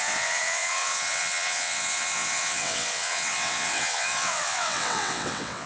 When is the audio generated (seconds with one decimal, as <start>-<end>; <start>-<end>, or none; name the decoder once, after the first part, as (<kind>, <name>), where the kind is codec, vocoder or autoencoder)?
0.0-5.7 (vocoder, WaveNeXt)

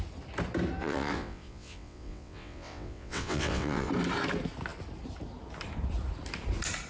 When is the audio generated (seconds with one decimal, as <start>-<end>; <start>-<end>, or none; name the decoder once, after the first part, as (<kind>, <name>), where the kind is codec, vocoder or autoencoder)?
0.8-3.9 (vocoder, WaveNeXt)

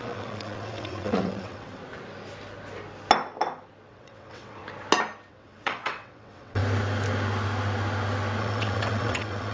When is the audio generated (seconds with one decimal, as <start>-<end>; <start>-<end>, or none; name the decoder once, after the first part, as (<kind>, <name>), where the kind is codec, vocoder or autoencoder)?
0.0-1.8 (vocoder, WaveNeXt); 3.9-4.6; 5.3-6.6; 8.4-9.5

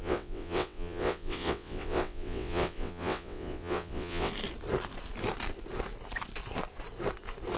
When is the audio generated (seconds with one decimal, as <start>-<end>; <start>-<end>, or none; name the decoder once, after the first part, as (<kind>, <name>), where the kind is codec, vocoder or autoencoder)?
0.0-4.3 (vocoder, WaveNeXt)

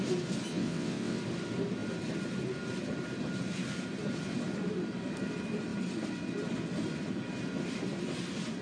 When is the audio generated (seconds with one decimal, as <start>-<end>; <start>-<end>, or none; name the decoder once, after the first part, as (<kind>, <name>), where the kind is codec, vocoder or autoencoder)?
0.5-1.2 (vocoder, WaveNeXt)

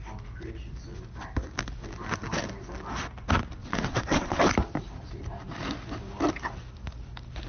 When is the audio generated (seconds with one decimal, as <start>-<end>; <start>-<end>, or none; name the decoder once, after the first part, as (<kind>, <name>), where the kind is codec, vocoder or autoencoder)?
3.6-4.5 (vocoder, WaveNeXt)

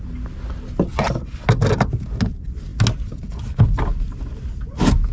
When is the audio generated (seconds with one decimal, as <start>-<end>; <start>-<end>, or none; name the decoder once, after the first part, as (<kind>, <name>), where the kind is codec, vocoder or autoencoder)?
none

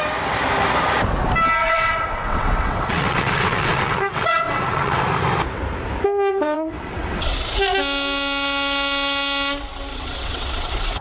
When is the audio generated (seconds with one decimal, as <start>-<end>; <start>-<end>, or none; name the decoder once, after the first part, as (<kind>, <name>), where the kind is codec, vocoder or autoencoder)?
1.6-5.0 (vocoder, WaveNeXt); 6.3-7.3; 9.9-11.0